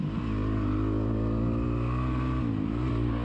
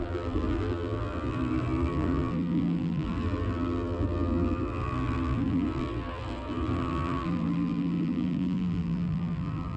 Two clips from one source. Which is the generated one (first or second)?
second